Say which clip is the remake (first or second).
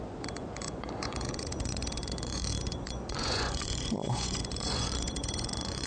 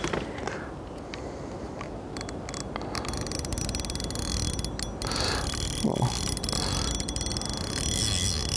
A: first